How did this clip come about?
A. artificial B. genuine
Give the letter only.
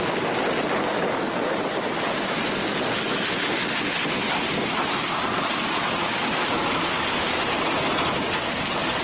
B